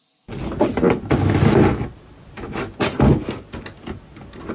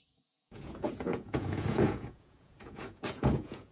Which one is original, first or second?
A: first